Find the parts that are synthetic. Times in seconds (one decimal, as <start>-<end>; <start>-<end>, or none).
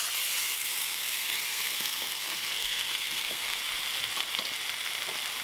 0.4-3.6